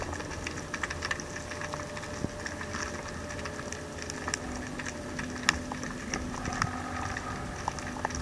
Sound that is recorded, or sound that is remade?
recorded